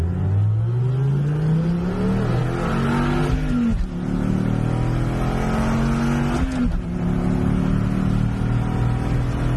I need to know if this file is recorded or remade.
recorded